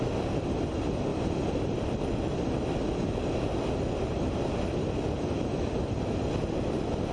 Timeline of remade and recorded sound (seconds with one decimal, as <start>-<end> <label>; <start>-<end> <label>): 0.0-1.1 recorded; 1.1-2.5 remade; 2.5-7.1 recorded